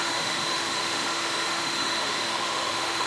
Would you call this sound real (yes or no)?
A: no